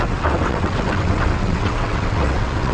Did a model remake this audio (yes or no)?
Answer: yes